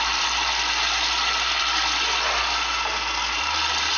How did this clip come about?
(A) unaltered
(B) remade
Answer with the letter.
A